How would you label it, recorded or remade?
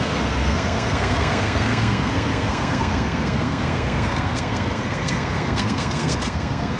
remade